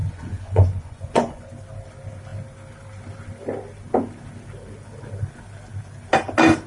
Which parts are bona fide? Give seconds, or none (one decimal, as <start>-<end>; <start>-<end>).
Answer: 1.5-6.7